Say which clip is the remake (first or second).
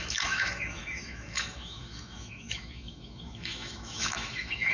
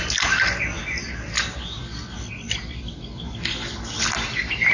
first